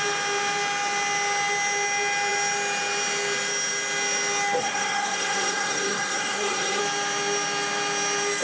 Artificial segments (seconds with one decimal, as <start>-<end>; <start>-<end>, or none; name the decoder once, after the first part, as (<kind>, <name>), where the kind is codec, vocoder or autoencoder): 4.6-6.8 (codec, SNAC)